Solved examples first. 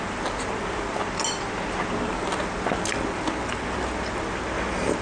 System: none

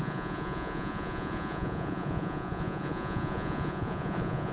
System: vocoder, Vocos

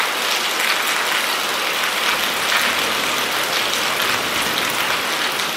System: none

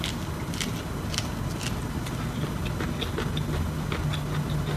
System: none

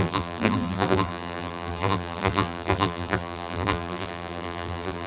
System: vocoder, BigVGAN v2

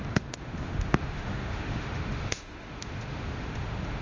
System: autoencoder, DAC-VAE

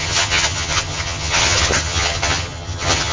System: vocoder, HiFi-GAN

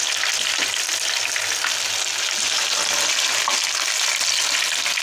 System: none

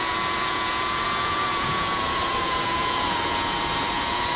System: vocoder, Vocos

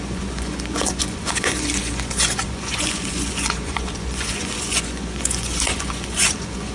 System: vocoder, Vocos